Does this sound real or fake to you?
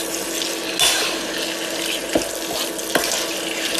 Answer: real